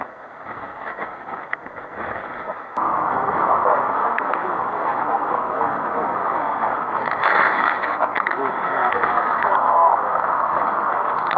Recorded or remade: remade